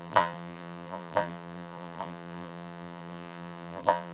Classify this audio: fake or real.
fake